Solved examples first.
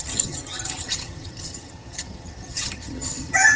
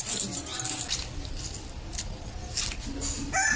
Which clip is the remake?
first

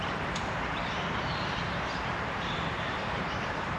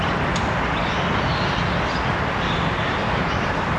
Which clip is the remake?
first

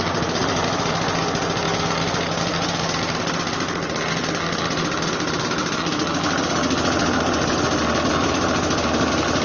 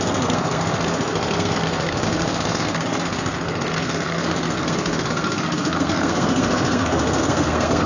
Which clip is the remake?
second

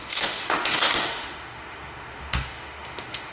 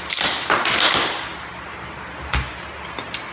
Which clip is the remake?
first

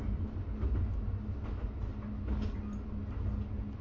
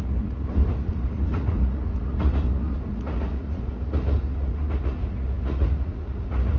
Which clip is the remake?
second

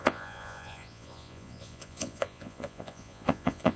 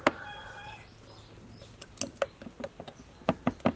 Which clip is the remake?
first